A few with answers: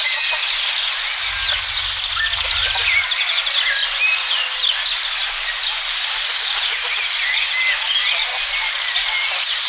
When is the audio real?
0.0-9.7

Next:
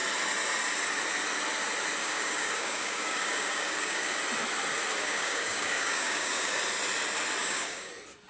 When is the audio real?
0.0-2.0; 4.2-4.9; 6.6-7.4; 7.9-8.3